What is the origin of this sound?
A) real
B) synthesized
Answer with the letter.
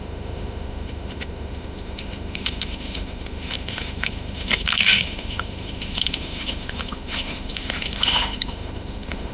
B